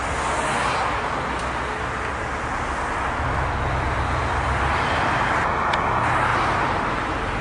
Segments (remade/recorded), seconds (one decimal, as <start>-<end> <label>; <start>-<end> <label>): 0.0-6.3 recorded; 6.3-6.9 remade; 6.9-7.4 recorded

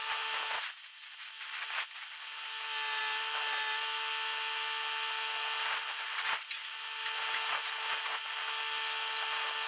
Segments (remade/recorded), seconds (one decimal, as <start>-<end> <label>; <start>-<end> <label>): 0.0-9.7 recorded

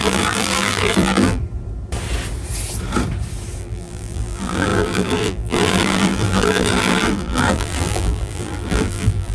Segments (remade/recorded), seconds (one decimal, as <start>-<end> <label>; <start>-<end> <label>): 0.0-1.4 remade; 1.4-3.6 recorded; 3.6-9.3 remade

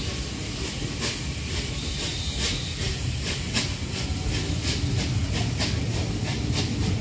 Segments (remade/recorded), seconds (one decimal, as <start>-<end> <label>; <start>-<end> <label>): 0.0-7.0 recorded

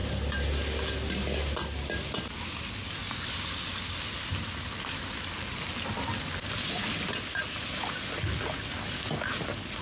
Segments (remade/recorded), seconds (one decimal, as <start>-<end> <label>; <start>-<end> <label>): 0.0-9.8 recorded

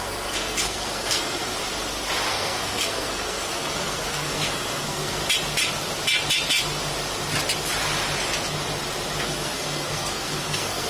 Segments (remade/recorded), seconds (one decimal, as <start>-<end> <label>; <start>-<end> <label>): 0.0-1.5 remade; 1.5-2.3 recorded; 2.3-5.2 remade; 5.2-9.2 recorded; 9.2-10.9 remade